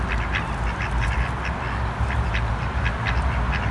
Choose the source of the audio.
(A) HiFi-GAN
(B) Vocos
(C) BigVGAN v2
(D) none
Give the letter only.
D